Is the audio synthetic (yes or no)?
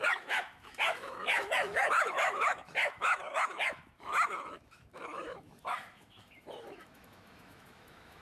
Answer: yes